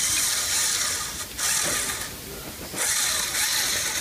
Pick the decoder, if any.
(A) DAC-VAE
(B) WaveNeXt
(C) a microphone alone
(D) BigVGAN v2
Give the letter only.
C